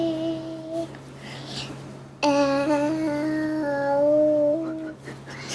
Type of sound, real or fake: real